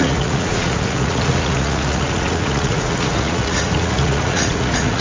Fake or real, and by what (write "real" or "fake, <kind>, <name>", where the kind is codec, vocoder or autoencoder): fake, vocoder, Vocos